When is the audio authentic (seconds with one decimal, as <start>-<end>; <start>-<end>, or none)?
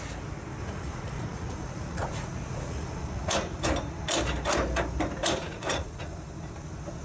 0.0-0.6; 3.3-5.4; 6.1-7.0